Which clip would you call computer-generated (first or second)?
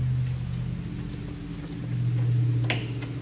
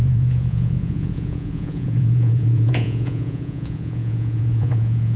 second